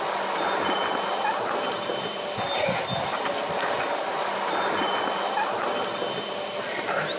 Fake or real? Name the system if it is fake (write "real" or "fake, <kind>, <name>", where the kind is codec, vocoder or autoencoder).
real